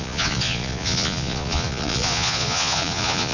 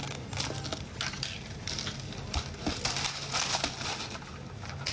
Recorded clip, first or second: second